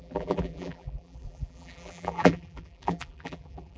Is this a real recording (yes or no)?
no